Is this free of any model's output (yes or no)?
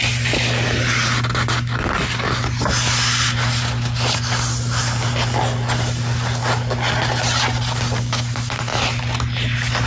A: yes